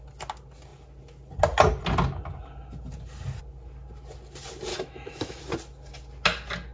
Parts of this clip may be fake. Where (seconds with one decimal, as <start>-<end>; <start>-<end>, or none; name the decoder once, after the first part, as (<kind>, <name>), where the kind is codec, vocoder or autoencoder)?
4.7-5.4 (autoencoder, DAC-VAE)

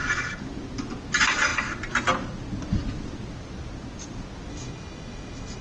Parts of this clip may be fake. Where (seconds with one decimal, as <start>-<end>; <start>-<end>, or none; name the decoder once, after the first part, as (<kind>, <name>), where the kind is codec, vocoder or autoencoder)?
4.5-5.6 (autoencoder, DAC-VAE)

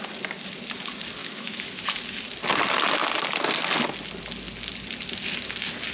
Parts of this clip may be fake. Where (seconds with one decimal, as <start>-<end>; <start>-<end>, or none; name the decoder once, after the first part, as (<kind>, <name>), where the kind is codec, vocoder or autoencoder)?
1.2-2.0 (autoencoder, DAC-VAE)

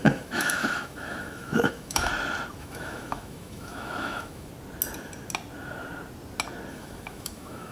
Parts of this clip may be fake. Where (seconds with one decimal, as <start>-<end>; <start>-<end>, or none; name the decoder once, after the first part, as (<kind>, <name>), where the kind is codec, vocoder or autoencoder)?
0.0-2.1 (autoencoder, DAC-VAE); 2.6-4.5; 6.7-7.7

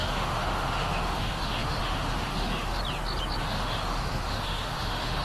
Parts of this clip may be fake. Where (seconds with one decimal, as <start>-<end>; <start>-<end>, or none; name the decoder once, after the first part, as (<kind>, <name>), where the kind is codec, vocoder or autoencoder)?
0.0-2.8 (autoencoder, DAC-VAE); 3.4-5.2

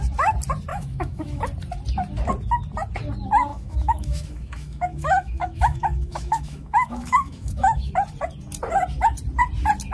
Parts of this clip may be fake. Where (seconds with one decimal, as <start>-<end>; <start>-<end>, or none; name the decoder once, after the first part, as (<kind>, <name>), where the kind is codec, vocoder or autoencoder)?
0.7-1.4 (autoencoder, DAC-VAE); 3.5-7.9

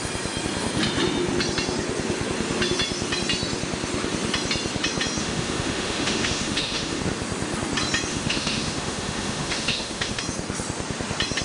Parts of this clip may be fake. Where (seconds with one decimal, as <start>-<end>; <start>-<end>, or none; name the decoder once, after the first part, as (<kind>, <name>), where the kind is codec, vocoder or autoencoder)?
5.2-7.0 (autoencoder, DAC-VAE); 8.1-10.2